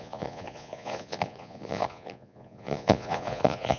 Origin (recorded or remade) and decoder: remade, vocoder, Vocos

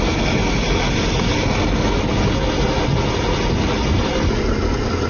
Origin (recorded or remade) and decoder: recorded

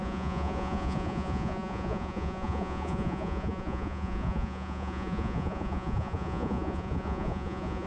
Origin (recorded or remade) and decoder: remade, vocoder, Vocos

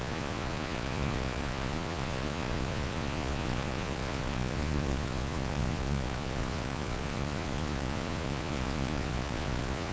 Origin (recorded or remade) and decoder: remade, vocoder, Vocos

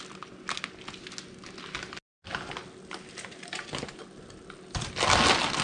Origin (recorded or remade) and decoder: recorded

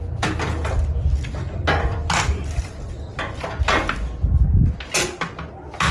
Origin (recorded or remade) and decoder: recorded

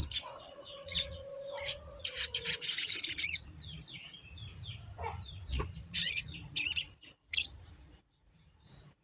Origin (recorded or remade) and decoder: remade, vocoder, Vocos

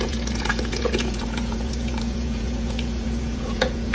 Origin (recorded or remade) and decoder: remade, vocoder, Vocos